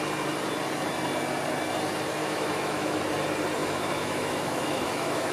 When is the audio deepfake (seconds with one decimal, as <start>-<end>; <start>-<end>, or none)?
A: 2.2-3.0; 3.6-5.3